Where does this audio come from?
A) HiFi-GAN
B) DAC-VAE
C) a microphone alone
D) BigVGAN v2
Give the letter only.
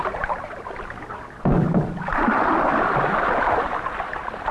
D